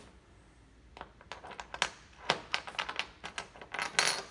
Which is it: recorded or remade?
recorded